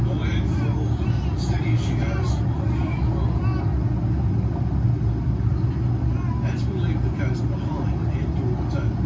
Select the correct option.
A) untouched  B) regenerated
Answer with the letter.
A